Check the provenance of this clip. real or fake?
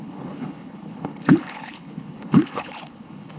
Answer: fake